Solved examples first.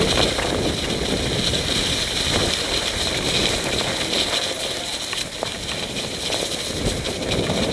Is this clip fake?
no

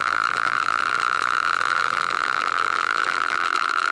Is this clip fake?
yes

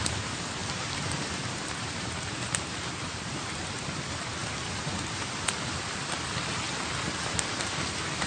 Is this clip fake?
yes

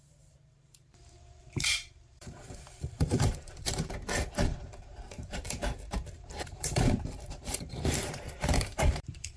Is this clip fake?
yes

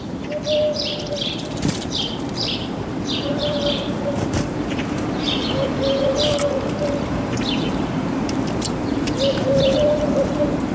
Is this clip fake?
yes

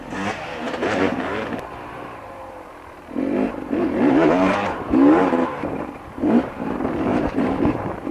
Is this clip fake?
yes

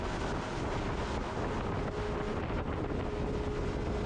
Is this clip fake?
no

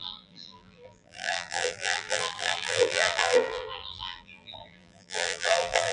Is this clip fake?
yes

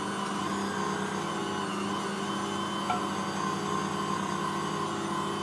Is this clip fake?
no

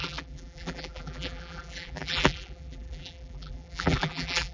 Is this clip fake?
yes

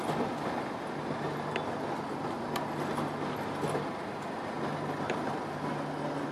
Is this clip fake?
no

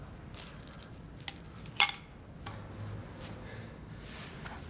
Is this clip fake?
no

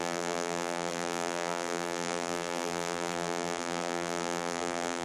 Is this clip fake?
yes